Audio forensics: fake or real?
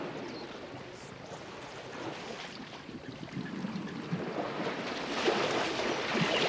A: real